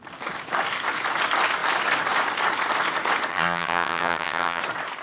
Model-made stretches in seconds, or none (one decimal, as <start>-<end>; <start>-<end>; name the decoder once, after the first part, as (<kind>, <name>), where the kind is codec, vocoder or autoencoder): 3.3-4.6 (vocoder, HiFi-GAN)

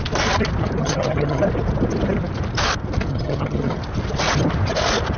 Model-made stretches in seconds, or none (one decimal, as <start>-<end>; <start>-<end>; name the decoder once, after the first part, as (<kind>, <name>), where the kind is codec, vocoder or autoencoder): 0.8-1.4 (vocoder, HiFi-GAN); 3.1-3.8